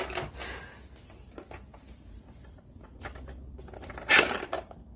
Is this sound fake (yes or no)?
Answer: no